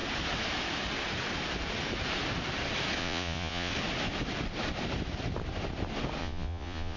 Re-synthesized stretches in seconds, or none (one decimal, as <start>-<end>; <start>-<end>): 3.0-3.7; 6.2-7.0